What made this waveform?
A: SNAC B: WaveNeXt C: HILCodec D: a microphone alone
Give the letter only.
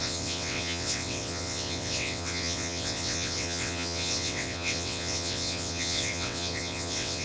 B